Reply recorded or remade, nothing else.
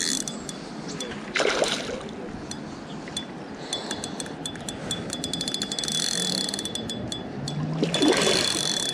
recorded